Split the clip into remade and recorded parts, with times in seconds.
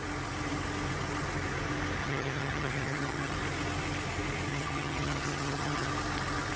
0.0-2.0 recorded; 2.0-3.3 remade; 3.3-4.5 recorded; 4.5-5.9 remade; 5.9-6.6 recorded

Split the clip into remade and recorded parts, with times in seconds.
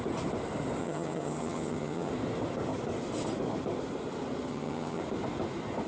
0.0-0.8 recorded; 0.8-2.1 remade; 2.1-4.5 recorded; 4.5-5.0 remade; 5.0-5.9 recorded